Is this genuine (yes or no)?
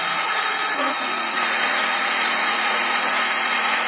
no